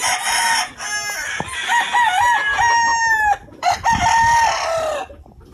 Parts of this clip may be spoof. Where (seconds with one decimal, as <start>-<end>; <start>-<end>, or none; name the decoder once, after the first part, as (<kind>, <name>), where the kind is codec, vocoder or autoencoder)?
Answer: none